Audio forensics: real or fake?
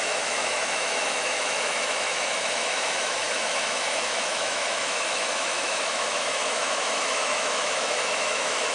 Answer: fake